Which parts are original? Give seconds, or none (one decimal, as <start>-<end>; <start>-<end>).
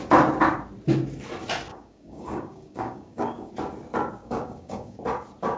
0.0-1.7; 3.5-4.2; 5.0-5.6